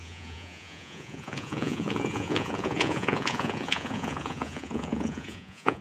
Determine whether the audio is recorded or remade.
remade